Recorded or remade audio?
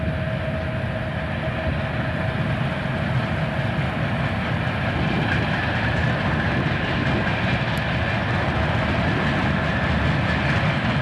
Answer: recorded